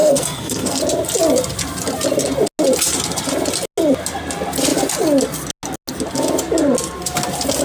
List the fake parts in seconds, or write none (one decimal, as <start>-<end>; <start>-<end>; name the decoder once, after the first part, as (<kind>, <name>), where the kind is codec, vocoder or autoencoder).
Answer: 0.0-0.8 (codec, SNAC)